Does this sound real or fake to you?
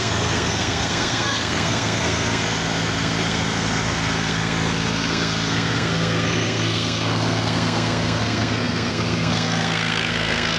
fake